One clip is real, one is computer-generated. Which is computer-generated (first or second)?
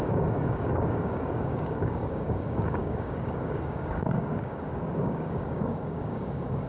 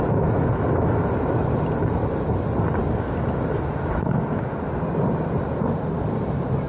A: first